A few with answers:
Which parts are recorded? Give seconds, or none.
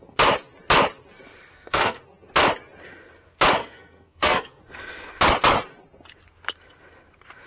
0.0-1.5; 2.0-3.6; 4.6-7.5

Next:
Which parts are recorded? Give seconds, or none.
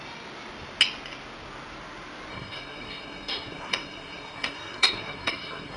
0.0-2.3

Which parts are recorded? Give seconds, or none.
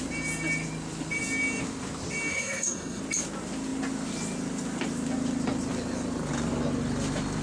0.0-2.3; 3.0-7.4